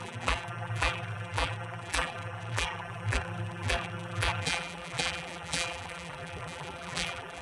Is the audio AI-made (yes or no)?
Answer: yes